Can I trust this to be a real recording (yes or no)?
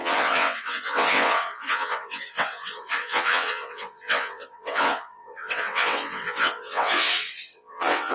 no